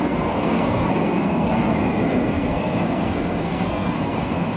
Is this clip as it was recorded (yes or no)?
no